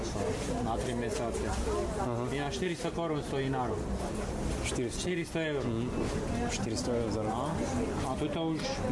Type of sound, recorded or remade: recorded